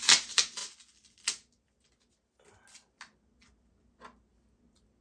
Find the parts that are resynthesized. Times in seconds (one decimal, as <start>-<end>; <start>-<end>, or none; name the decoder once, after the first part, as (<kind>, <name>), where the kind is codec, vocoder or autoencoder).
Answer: none